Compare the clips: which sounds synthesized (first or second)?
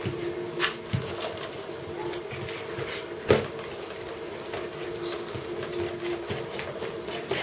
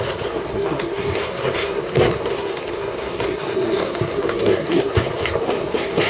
second